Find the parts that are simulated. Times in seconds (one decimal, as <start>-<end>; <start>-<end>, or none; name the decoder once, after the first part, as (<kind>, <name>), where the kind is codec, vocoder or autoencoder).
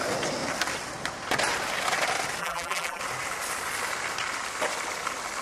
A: 2.4-3.0 (vocoder, BigVGAN v2)